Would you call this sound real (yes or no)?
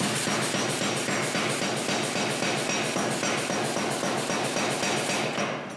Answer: yes